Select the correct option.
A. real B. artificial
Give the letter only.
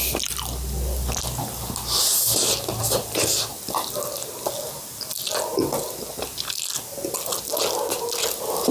A